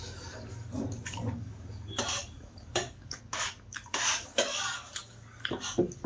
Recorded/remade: remade